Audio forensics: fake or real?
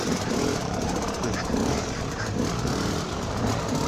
fake